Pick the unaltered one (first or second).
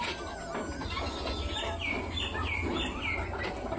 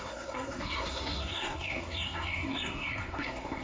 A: first